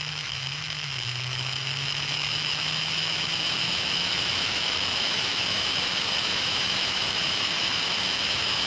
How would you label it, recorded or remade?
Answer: remade